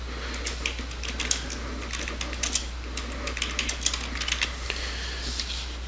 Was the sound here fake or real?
real